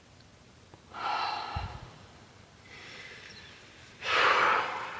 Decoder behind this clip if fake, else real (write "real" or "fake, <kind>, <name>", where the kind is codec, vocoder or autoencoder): real